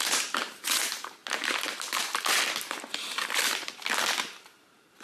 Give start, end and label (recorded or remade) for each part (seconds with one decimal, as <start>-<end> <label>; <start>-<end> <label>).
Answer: 0.0-1.2 remade; 1.2-4.2 recorded; 4.2-5.0 remade